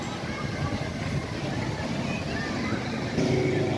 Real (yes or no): yes